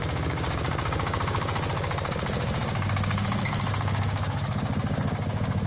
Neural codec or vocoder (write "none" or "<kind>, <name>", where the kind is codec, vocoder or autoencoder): codec, DAC